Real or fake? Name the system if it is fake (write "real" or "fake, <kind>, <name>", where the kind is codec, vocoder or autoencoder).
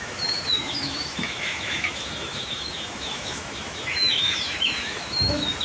fake, autoencoder, DAC-VAE